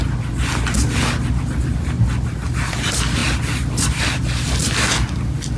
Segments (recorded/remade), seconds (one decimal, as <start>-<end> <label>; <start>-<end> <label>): 0.0-3.2 recorded; 3.2-4.7 remade; 4.7-5.6 recorded